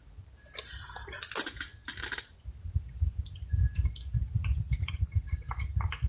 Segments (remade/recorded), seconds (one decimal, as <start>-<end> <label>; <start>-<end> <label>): 0.0-6.1 recorded

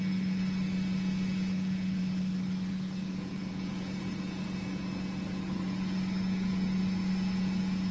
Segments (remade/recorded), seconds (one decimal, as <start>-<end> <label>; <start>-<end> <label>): 0.0-2.0 remade; 2.0-2.7 recorded; 2.7-7.9 remade